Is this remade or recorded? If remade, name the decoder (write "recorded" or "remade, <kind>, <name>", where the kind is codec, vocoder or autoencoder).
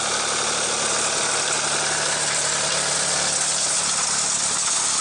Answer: recorded